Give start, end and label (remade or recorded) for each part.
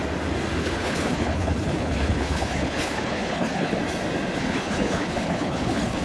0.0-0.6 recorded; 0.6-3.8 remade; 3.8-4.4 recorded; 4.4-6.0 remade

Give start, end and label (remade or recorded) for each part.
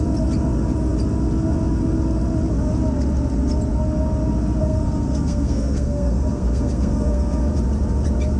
0.0-4.6 recorded; 4.6-7.5 remade; 7.5-8.4 recorded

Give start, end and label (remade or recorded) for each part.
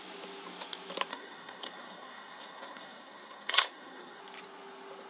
0.0-1.1 recorded; 1.1-4.2 remade; 4.2-5.1 recorded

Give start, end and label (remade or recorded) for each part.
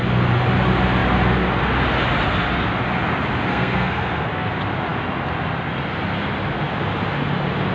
0.0-3.5 recorded; 3.5-4.5 remade; 4.5-7.7 recorded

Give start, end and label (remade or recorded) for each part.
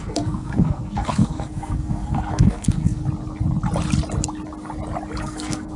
0.0-3.0 remade; 3.0-5.2 recorded; 5.2-5.8 remade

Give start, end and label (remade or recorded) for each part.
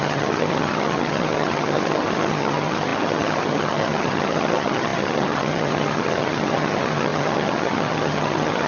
0.0-8.7 remade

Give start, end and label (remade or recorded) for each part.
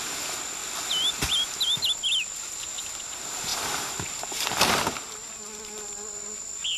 0.0-6.8 recorded